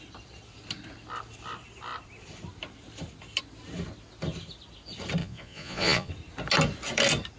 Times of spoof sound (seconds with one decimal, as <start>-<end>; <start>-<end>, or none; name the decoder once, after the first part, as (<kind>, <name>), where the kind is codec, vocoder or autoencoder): 5.2-6.1 (vocoder, Vocos)